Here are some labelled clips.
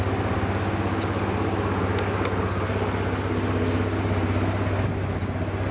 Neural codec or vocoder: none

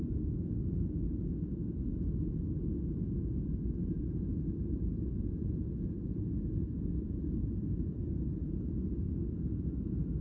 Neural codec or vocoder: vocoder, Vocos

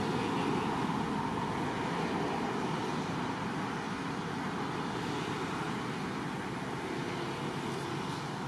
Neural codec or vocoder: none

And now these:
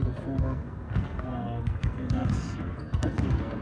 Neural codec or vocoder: codec, SNAC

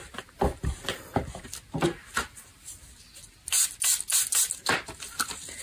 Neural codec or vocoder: none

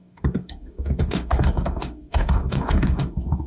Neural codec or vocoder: autoencoder, DAC-VAE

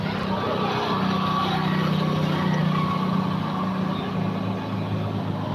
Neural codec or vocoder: none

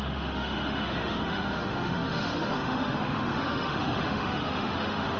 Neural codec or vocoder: autoencoder, DAC-VAE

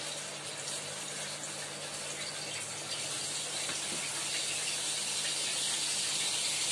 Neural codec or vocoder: none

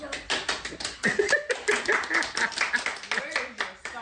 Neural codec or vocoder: none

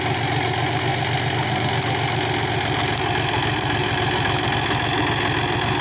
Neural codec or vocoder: none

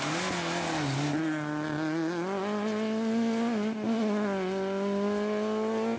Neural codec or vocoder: none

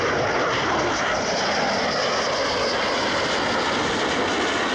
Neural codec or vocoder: none